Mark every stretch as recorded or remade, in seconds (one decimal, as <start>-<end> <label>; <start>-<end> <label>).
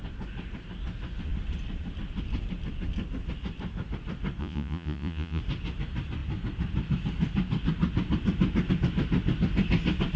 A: 0.0-4.4 recorded; 4.4-5.4 remade; 5.4-10.2 recorded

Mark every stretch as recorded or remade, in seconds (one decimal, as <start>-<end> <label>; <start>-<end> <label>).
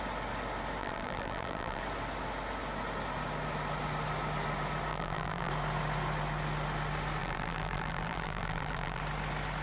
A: 0.0-0.8 recorded; 0.8-1.8 remade; 1.8-4.9 recorded; 4.9-5.5 remade; 5.5-7.2 recorded; 7.2-9.0 remade; 9.0-9.6 recorded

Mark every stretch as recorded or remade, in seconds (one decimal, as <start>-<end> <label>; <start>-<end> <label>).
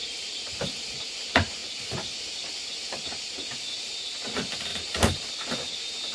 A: 0.0-0.5 remade; 0.5-4.7 recorded; 4.7-5.3 remade; 5.3-6.1 recorded